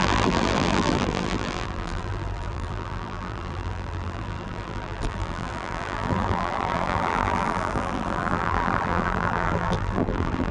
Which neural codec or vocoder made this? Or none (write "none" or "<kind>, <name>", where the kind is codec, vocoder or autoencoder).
vocoder, BigVGAN v2